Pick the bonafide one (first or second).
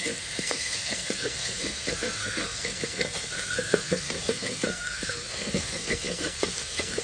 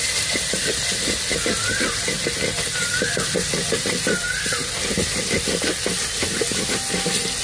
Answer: second